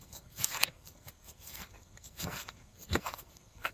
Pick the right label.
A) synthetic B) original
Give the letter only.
A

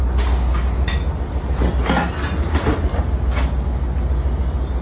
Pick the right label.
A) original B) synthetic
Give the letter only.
A